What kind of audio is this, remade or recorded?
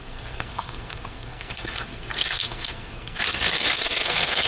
remade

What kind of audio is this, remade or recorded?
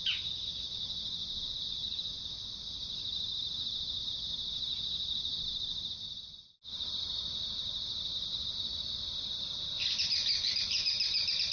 recorded